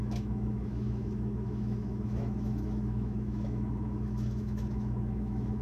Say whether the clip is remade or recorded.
remade